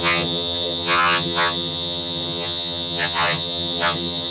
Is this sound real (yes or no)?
no